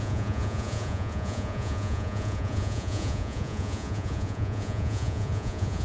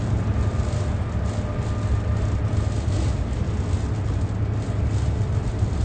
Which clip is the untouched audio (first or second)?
second